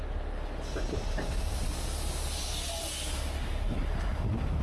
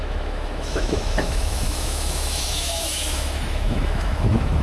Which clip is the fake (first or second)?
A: second